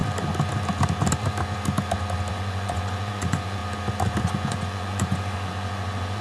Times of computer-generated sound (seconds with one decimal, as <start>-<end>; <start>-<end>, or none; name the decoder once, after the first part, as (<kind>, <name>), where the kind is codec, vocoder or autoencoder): 2.3-3.6 (vocoder, Vocos); 4.2-6.2